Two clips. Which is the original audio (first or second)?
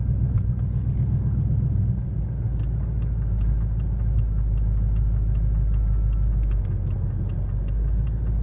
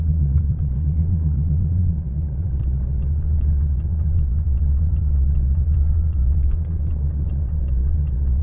first